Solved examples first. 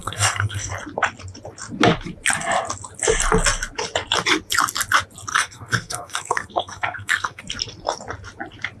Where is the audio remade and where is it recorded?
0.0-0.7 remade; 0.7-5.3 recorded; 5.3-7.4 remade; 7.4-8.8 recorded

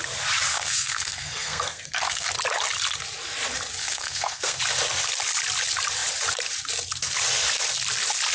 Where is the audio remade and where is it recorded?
0.0-0.5 recorded; 0.5-2.3 remade; 2.3-3.8 recorded; 3.8-4.6 remade; 4.6-8.3 recorded

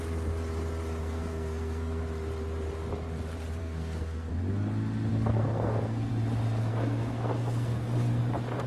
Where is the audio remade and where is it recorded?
0.0-1.0 recorded; 1.0-2.0 remade; 2.0-3.6 recorded; 3.6-4.3 remade; 4.3-5.1 recorded; 5.1-6.1 remade; 6.1-6.6 recorded; 6.6-8.2 remade; 8.2-8.7 recorded